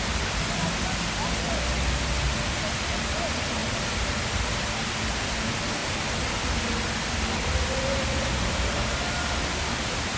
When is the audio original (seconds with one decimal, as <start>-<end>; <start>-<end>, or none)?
0.0-5.8; 6.3-10.2